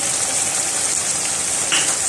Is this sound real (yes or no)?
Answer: yes